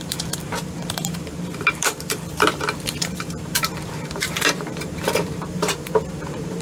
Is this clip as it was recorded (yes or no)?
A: no